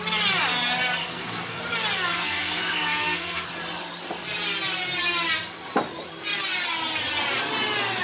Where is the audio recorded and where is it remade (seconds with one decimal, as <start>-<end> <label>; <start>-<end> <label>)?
0.0-1.0 recorded; 1.0-1.6 remade; 1.6-2.1 recorded; 2.1-3.5 remade; 3.5-8.0 recorded